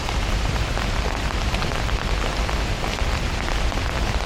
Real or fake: real